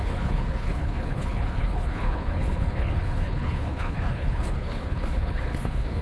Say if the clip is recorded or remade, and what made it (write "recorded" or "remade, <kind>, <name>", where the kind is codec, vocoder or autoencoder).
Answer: remade, codec, HILCodec